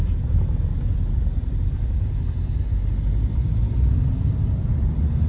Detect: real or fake real